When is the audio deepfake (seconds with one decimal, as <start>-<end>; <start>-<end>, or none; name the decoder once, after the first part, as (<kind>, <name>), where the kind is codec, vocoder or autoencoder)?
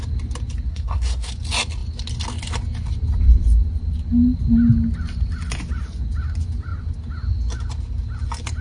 0.7-1.3 (codec, SNAC)